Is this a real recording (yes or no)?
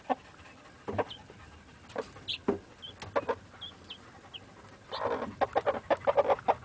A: yes